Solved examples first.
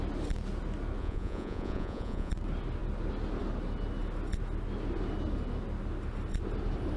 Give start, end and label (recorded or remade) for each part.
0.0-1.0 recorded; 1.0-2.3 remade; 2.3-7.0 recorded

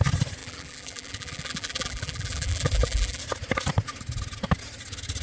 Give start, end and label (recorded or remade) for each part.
0.0-0.4 recorded; 0.4-3.2 remade; 3.2-5.2 recorded